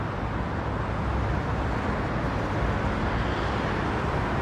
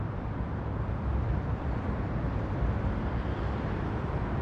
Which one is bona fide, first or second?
first